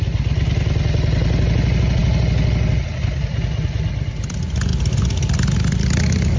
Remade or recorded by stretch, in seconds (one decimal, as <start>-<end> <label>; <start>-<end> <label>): 0.0-6.4 recorded